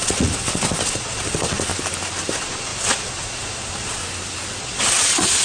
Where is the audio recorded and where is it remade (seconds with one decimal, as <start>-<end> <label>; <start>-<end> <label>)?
0.0-1.7 remade; 1.7-2.3 recorded; 2.3-4.0 remade; 4.0-4.6 recorded; 4.6-5.4 remade